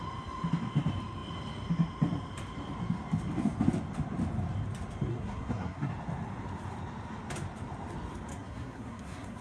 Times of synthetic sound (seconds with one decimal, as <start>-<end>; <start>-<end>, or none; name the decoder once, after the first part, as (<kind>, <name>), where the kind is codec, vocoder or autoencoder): 5.1-5.9 (codec, SNAC); 8.3-9.4